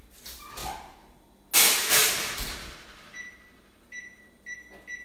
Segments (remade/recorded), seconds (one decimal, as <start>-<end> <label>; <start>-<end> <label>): 0.0-0.6 recorded; 0.6-1.5 remade; 1.5-2.0 recorded; 2.0-4.6 remade; 4.6-5.0 recorded